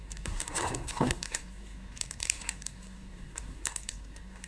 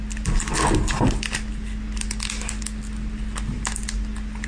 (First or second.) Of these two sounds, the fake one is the first